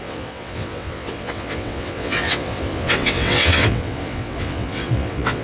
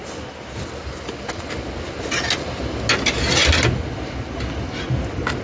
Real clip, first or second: second